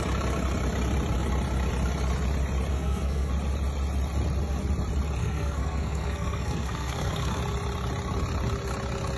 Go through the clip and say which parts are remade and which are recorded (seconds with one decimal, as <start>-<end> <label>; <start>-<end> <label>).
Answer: 0.0-2.7 recorded; 2.7-3.3 remade; 3.3-5.2 recorded; 5.2-7.4 remade; 7.4-9.2 recorded